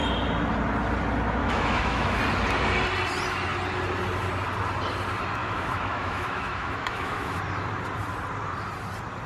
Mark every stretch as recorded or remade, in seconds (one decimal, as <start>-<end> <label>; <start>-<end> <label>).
0.0-1.4 recorded; 1.4-2.2 remade; 2.2-5.4 recorded; 5.4-7.4 remade; 7.4-9.3 recorded